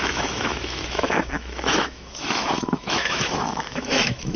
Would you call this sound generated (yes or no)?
yes